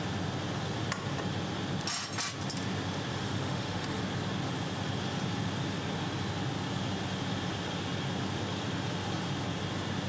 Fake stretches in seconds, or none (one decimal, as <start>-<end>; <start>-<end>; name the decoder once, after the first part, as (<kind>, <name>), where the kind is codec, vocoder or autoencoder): 3.1-4.0 (autoencoder, DAC-VAE)

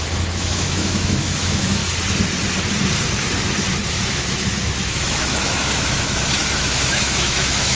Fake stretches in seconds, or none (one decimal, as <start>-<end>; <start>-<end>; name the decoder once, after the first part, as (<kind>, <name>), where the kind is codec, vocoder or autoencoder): 0.0-1.8 (autoencoder, DAC-VAE); 3.9-7.7

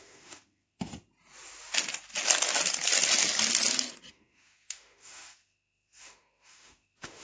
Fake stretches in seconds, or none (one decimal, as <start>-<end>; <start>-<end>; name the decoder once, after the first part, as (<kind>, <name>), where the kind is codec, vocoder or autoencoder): 0.0-0.9 (autoencoder, DAC-VAE); 4.1-7.2

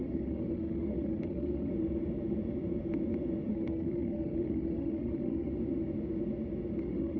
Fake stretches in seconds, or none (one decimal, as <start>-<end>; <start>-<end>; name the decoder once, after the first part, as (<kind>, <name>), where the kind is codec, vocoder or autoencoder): 0.0-1.7 (autoencoder, DAC-VAE); 3.5-5.5; 6.8-7.2

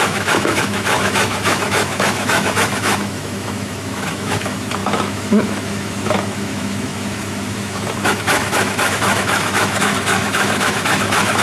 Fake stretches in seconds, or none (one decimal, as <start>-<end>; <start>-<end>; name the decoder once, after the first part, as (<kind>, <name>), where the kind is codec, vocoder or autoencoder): 0.0-11.4 (autoencoder, DAC-VAE)

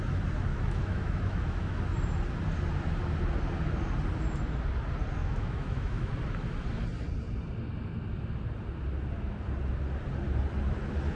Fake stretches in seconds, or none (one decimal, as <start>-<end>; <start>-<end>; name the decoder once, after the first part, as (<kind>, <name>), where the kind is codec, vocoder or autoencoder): 0.5-1.8 (autoencoder, DAC-VAE); 5.2-6.1

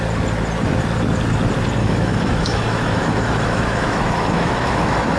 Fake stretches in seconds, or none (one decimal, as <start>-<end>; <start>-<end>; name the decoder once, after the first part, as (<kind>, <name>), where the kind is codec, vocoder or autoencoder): 1.8-5.2 (autoencoder, DAC-VAE)

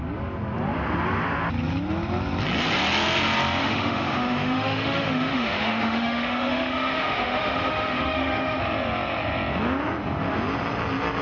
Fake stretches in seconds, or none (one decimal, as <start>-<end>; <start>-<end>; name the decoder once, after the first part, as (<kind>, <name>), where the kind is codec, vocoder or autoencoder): 3.6-8.6 (autoencoder, DAC-VAE)